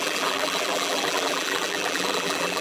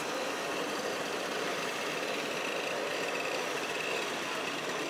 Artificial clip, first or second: first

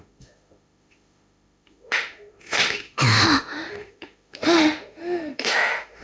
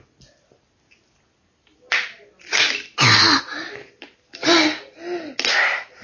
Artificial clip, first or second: first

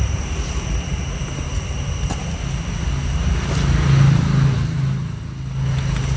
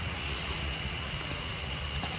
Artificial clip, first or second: second